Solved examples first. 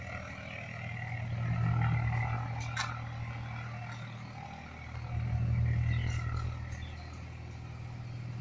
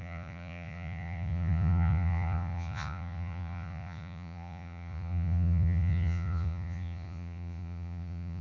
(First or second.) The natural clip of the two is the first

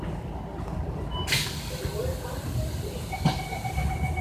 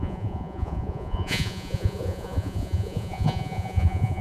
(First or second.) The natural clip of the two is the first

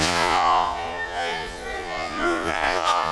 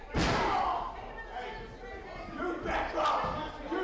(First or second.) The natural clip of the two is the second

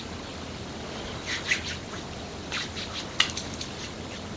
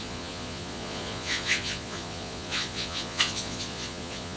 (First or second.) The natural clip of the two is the first